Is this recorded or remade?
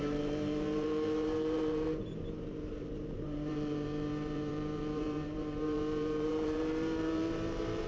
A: remade